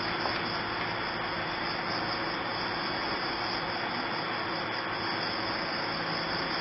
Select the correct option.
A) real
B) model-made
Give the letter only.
A